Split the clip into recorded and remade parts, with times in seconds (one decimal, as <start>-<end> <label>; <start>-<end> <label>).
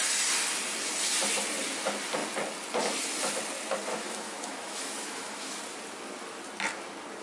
0.0-3.9 recorded; 3.9-5.6 remade; 5.6-7.2 recorded